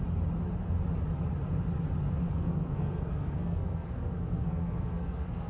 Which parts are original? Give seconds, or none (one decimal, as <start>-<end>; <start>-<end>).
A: 0.0-2.3